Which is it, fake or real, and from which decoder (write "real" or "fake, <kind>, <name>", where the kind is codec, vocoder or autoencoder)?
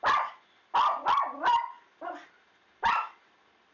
real